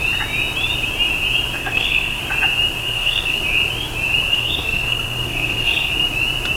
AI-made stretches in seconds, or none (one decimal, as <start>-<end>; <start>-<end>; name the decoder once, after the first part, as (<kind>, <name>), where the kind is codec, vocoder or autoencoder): 1.6-2.2 (codec, SNAC); 2.8-3.4; 4.3-5.9